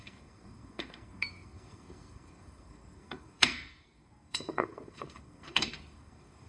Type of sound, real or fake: fake